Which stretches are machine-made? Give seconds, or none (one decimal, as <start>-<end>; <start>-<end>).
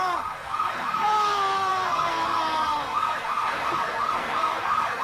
0.0-5.0